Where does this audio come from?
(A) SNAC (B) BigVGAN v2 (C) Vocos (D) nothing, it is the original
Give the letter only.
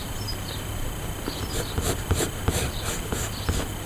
B